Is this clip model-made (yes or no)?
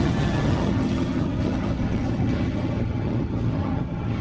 yes